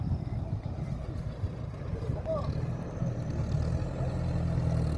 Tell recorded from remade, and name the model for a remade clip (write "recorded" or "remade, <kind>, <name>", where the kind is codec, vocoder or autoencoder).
recorded